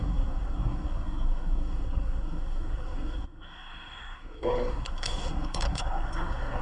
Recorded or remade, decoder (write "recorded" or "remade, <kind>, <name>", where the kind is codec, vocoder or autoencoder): remade, codec, SNAC